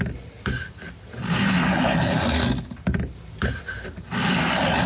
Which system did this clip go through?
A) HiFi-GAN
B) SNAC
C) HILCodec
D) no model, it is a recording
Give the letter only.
D